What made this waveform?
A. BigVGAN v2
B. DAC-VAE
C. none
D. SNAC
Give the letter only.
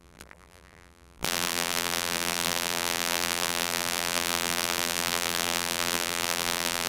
A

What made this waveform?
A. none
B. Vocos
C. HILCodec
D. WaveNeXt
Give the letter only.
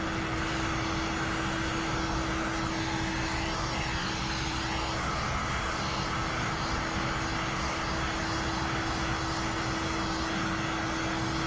A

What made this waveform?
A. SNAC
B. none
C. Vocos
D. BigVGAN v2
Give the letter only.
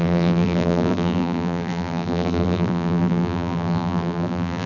D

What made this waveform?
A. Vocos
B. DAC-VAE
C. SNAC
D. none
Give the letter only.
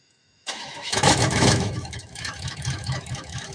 B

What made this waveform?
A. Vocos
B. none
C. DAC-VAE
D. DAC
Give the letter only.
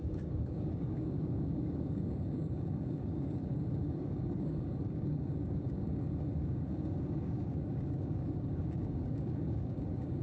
D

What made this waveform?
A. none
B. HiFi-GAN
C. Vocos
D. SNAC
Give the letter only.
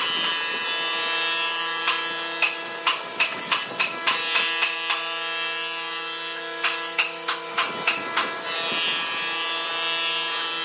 A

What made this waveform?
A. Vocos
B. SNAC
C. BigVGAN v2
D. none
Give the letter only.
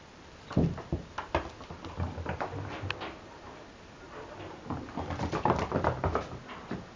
D